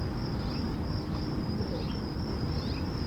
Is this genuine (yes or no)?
no